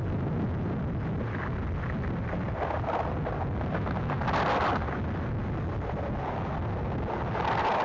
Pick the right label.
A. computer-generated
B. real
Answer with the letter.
B